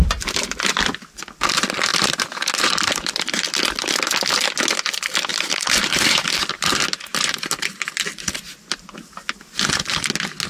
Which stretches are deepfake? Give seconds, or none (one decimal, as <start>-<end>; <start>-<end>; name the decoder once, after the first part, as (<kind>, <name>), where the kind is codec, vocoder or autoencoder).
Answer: 1.9-3.5 (vocoder, BigVGAN v2); 5.3-7.4